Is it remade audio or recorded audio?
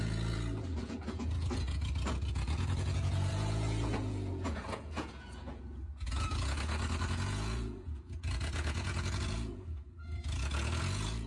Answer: remade